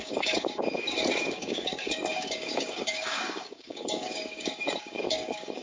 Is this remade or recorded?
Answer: remade